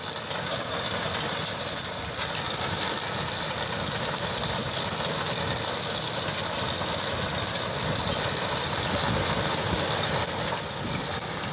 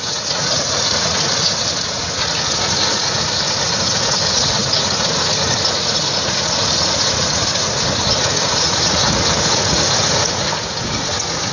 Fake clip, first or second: second